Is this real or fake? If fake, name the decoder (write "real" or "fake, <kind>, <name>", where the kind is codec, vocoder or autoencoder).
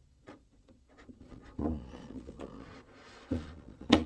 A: fake, vocoder, Vocos